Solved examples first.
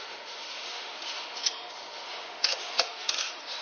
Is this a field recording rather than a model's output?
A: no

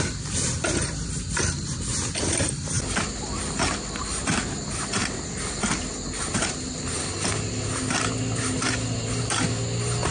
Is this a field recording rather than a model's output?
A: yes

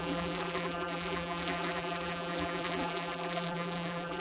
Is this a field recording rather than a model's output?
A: no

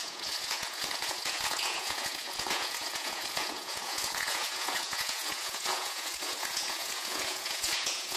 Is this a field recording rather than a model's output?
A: no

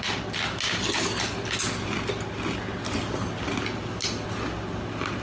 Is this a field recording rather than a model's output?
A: yes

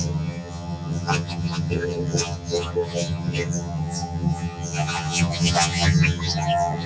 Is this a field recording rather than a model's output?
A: no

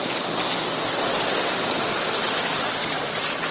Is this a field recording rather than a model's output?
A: yes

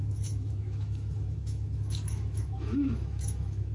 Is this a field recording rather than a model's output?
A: no